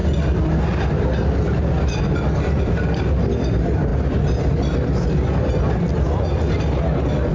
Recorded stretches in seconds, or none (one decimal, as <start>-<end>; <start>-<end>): 0.0-7.3